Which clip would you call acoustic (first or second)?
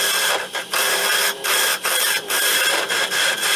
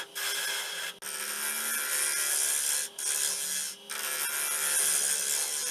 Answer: second